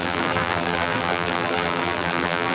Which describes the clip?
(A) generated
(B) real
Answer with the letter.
A